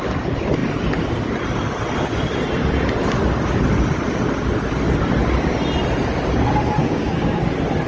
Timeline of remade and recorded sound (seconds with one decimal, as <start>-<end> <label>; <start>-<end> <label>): 0.0-6.8 recorded; 6.8-7.4 remade; 7.4-7.9 recorded